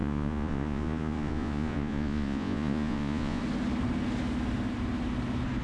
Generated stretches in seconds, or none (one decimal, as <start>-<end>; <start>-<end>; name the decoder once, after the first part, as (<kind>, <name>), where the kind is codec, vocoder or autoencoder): 0.0-3.4 (vocoder, Vocos)